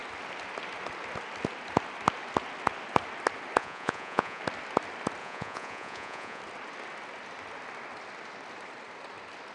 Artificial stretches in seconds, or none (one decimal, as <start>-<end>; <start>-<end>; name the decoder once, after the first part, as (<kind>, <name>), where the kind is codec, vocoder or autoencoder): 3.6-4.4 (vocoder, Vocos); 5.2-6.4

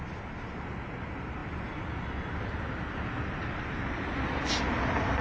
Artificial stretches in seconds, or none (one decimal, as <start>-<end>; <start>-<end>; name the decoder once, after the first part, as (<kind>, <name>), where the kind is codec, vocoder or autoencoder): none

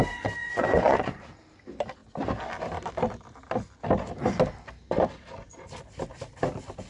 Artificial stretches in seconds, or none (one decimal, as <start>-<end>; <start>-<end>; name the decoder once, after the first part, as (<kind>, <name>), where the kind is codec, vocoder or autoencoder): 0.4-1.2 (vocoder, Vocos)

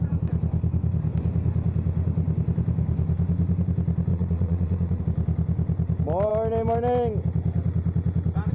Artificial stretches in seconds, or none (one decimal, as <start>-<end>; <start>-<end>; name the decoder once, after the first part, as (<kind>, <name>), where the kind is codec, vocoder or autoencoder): 4.1-5.0 (vocoder, Vocos)

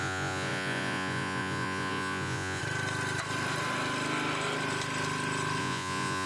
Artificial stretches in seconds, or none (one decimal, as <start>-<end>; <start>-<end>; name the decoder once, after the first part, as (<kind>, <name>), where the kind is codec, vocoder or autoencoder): 0.0-2.6 (vocoder, Vocos); 5.6-6.3

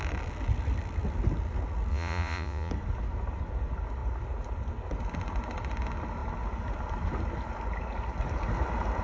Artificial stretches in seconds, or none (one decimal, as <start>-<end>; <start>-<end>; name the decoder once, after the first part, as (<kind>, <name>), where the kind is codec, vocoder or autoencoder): 1.9-2.7 (vocoder, Vocos)

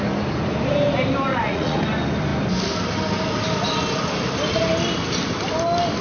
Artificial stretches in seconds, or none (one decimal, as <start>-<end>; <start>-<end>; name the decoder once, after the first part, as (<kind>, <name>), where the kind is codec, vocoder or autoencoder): 1.3-1.8 (vocoder, Vocos)

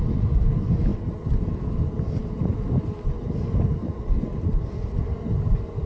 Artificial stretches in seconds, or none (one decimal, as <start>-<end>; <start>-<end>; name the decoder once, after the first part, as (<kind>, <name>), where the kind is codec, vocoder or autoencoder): none